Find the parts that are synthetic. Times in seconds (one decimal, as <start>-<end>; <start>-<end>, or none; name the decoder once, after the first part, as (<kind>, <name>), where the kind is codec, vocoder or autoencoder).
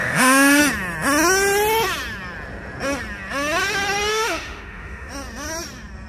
0.0-0.6 (autoencoder, DAC-VAE); 4.1-5.1